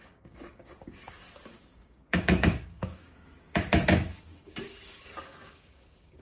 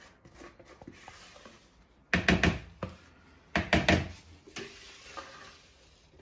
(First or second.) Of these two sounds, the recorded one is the second